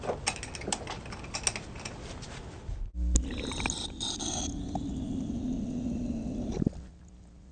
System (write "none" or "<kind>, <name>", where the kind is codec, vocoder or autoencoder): none